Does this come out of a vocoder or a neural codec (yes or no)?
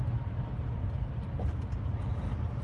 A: no